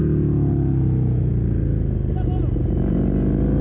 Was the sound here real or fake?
real